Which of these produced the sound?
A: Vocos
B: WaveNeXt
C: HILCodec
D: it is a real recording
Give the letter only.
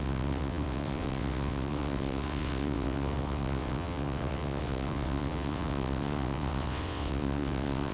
B